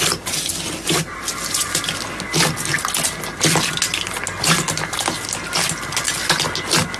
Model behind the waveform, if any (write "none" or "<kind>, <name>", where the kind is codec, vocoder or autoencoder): none